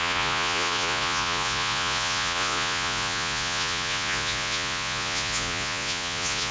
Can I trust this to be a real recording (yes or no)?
no